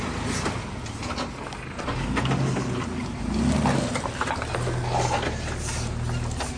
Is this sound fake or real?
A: real